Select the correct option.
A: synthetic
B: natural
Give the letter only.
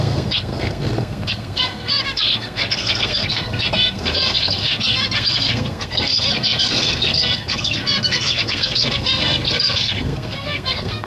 A